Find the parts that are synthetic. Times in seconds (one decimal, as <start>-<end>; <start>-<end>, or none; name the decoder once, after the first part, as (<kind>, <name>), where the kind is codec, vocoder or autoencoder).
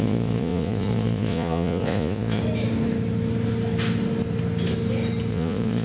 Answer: 0.0-2.4 (vocoder, Vocos); 5.3-5.8